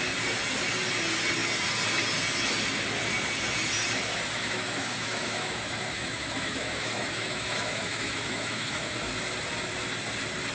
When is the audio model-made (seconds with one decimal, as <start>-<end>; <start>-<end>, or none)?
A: 4.4-9.1